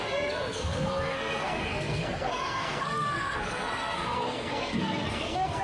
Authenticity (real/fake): fake